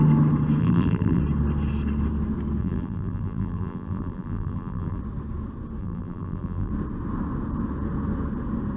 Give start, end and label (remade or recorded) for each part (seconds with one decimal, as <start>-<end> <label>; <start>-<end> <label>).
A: 0.0-0.6 recorded; 0.6-1.2 remade; 1.2-2.6 recorded; 2.6-5.0 remade; 5.0-5.8 recorded; 5.8-6.7 remade; 6.7-8.8 recorded